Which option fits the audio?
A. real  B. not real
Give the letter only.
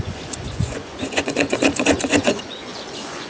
B